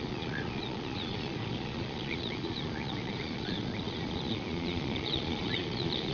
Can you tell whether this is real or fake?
fake